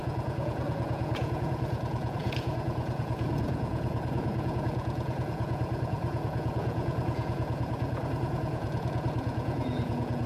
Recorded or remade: remade